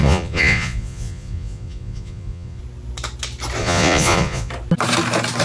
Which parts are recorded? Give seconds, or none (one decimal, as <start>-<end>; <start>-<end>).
2.6-3.6; 4.5-5.4